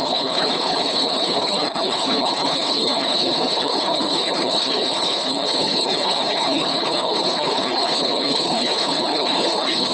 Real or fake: fake